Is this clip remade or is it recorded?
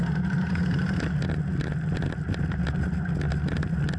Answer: recorded